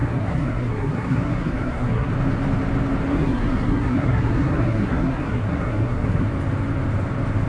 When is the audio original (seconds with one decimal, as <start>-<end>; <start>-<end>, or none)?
2.1-3.1; 6.3-7.5